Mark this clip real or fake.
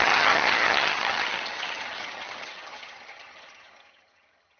fake